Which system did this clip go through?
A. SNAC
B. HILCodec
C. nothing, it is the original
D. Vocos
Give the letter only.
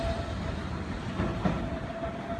C